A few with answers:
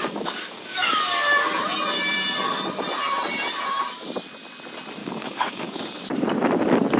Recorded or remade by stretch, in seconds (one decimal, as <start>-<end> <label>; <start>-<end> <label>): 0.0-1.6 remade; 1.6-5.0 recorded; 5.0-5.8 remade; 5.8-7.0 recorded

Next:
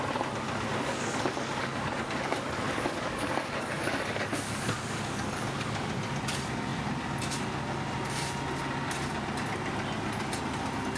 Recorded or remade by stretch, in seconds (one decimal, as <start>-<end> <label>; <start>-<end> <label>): 0.0-0.7 recorded; 0.7-5.9 remade; 5.9-11.0 recorded

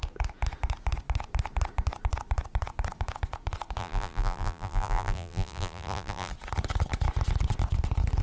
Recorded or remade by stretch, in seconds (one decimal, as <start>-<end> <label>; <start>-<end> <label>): 0.0-3.8 recorded; 3.8-6.3 remade; 6.3-8.2 recorded

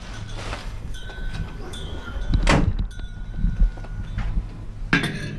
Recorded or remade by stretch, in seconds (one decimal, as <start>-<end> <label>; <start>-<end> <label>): 0.0-0.6 recorded; 0.6-2.2 remade; 2.2-5.4 recorded

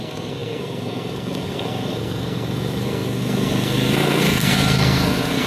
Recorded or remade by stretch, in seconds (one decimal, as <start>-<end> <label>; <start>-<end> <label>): 0.0-5.5 remade

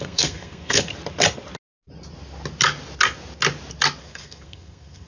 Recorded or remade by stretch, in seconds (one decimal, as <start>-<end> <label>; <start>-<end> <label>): 0.0-0.9 remade; 0.9-4.0 recorded; 4.0-5.1 remade

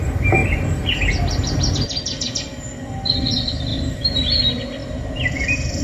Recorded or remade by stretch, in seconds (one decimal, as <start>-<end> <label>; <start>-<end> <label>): 0.0-0.4 recorded; 0.4-2.4 remade; 2.4-3.7 recorded; 3.7-4.2 remade; 4.2-4.8 recorded; 4.8-5.8 remade

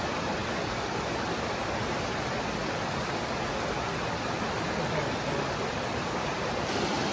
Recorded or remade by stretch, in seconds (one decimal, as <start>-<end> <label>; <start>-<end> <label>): 0.0-7.1 recorded